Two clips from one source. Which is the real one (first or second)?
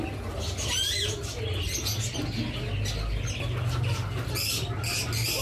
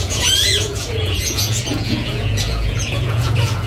first